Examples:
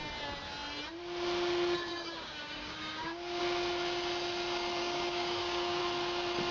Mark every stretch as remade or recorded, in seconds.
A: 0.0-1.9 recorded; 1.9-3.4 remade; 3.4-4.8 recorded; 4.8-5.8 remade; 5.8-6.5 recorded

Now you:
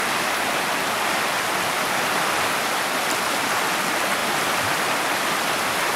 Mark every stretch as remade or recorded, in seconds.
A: 0.0-6.0 recorded